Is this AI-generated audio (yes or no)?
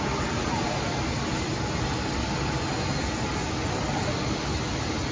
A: no